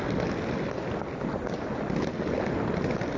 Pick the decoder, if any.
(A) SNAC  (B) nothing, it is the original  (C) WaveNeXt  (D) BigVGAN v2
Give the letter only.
B